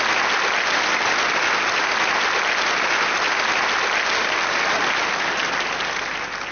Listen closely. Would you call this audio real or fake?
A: real